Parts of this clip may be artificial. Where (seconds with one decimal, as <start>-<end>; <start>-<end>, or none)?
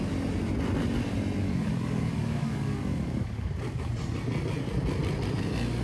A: 1.4-3.9